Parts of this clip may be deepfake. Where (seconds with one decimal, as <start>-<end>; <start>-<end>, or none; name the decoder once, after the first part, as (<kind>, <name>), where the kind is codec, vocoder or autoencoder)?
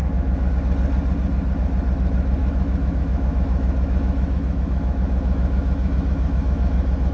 0.0-0.5 (autoencoder, DAC-VAE); 2.4-7.1